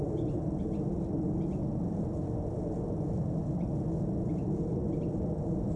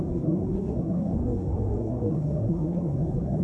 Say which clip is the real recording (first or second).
first